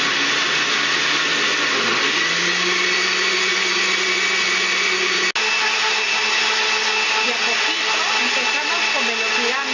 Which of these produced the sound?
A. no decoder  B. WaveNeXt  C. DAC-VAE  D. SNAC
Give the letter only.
A